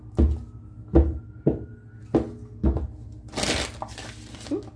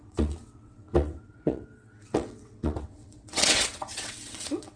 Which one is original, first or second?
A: first